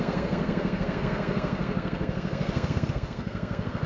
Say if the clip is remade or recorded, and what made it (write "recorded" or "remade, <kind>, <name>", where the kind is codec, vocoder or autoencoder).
remade, codec, SNAC